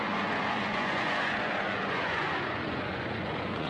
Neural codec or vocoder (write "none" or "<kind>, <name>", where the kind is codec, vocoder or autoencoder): vocoder, Vocos